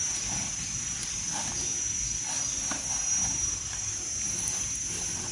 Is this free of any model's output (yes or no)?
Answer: yes